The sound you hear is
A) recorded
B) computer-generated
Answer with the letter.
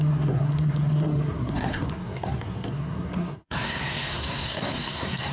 B